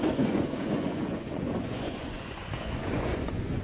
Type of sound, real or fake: fake